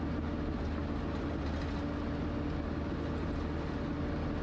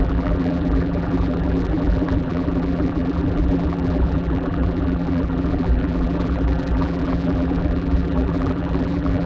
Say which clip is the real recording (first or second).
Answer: first